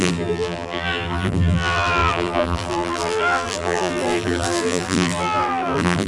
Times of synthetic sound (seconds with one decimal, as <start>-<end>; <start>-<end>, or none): 0.0-6.1